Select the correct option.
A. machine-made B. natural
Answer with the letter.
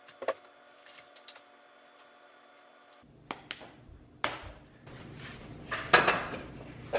B